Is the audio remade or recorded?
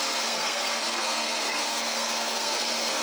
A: remade